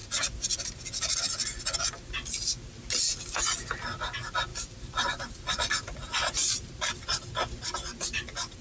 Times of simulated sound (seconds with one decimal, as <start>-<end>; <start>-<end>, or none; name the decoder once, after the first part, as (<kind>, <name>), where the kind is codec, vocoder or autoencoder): 4.5-5.7 (vocoder, BigVGAN v2); 6.4-7.0